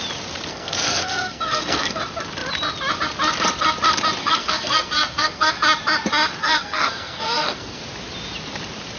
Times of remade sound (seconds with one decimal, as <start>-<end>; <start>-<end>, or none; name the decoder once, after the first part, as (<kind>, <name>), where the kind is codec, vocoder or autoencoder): 0.5-2.0 (codec, SNAC); 4.2-5.5; 6.4-7.8